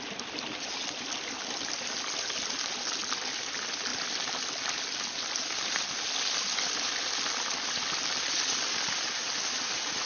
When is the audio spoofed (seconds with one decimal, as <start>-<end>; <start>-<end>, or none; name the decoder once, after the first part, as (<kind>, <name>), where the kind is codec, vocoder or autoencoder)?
none